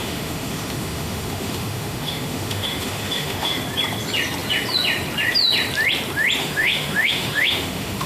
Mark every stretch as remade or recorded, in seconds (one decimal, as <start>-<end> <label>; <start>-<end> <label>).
0.0-3.6 remade; 3.6-6.4 recorded; 6.4-8.1 remade